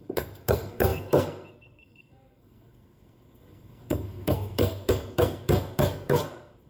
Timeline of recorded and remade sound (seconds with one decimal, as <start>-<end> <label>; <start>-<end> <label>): 0.0-6.7 remade

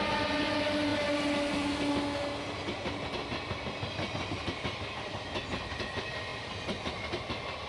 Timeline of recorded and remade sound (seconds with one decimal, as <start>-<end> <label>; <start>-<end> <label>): 0.0-7.7 recorded

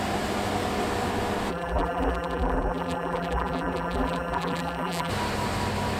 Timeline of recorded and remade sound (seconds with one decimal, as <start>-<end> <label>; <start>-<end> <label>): 0.0-1.5 recorded; 1.5-5.1 remade; 5.1-6.0 recorded

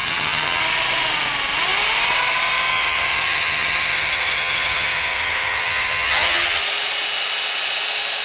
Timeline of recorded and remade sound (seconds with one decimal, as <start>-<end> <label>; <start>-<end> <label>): 0.0-0.6 remade; 0.6-2.7 recorded; 2.7-6.6 remade; 6.6-8.2 recorded

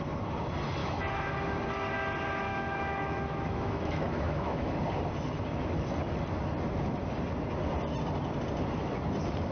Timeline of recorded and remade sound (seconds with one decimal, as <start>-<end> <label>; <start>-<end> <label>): 0.0-0.8 recorded; 0.8-1.3 remade; 1.3-2.5 recorded; 2.5-4.7 remade; 4.7-9.5 recorded

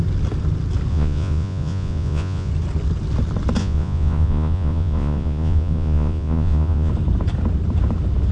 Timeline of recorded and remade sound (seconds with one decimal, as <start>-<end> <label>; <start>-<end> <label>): 0.0-0.9 recorded; 0.9-2.5 remade; 2.5-3.6 recorded; 3.6-6.9 remade; 6.9-8.3 recorded

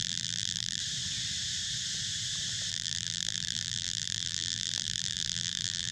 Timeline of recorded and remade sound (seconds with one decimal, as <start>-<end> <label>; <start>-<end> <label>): 0.0-0.8 remade; 0.8-2.7 recorded; 2.7-5.9 remade